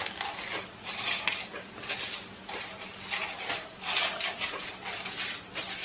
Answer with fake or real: real